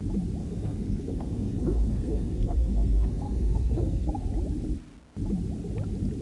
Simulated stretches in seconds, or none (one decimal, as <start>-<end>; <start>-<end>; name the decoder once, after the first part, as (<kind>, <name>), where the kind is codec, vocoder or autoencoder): 0.4-4.1 (codec, SNAC)